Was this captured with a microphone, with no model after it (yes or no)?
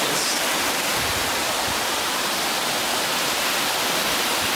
yes